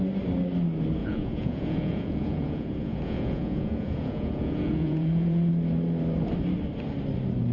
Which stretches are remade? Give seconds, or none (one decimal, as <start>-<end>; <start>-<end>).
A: 1.0-5.5